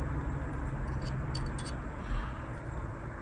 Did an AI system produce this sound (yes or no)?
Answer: no